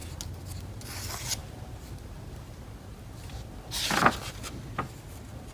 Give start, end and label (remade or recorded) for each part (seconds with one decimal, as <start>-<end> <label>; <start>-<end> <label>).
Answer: 0.0-5.5 recorded